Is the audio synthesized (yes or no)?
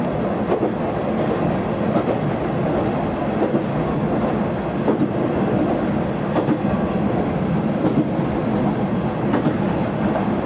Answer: no